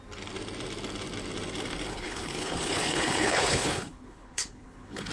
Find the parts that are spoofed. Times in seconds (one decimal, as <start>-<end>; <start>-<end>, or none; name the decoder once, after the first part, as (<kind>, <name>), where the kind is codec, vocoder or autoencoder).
1.9-5.1 (codec, HILCodec)